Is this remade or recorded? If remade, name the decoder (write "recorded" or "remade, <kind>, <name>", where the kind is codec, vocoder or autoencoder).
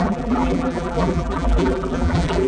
remade, vocoder, BigVGAN v2